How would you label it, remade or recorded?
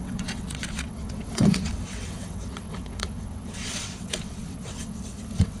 remade